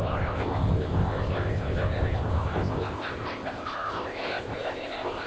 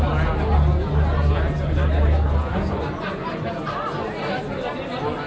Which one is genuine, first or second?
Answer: second